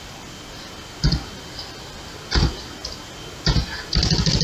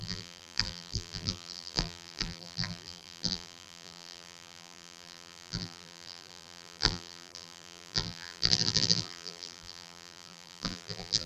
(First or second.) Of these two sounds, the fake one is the second